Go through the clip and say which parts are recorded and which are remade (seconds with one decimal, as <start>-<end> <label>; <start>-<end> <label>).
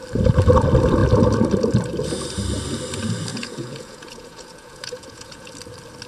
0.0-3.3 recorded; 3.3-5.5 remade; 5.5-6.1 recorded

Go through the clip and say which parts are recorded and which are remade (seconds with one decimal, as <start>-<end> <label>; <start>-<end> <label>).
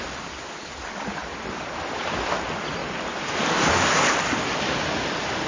0.0-1.2 recorded; 1.2-2.1 remade; 2.1-2.8 recorded; 2.8-4.0 remade; 4.0-5.5 recorded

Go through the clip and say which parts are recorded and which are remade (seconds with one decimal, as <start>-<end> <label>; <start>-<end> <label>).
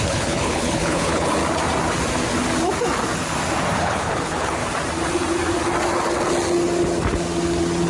0.0-1.4 remade; 1.4-3.8 recorded; 3.8-4.6 remade; 4.6-7.9 recorded